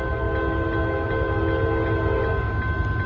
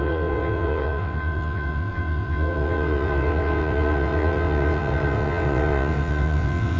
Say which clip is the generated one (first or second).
second